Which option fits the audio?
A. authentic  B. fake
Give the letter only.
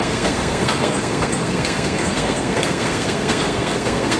B